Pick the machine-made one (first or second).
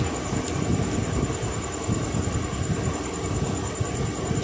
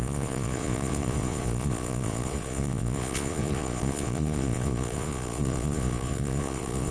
second